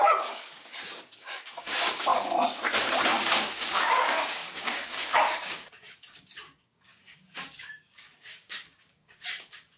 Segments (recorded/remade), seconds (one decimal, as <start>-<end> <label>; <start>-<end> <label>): 0.0-2.1 remade; 2.1-3.2 recorded; 3.2-9.8 remade